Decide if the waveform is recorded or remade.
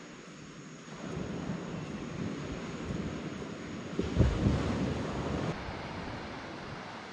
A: recorded